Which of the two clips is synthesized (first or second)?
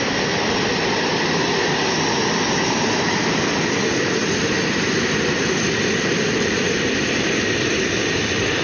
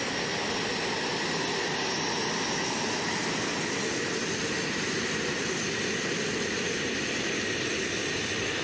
first